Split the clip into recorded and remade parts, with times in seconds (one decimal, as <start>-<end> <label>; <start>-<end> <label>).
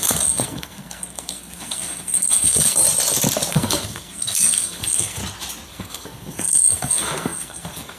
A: 0.0-2.8 remade; 2.8-3.5 recorded; 3.5-5.2 remade; 5.2-5.7 recorded; 5.7-8.0 remade